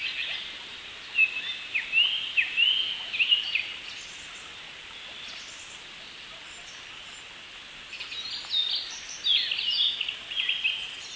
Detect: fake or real real